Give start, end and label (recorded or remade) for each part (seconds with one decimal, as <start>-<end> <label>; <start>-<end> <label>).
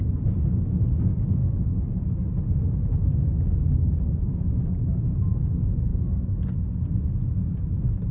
0.0-8.1 recorded